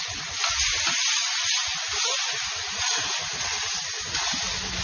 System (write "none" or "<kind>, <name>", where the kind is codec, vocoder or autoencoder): none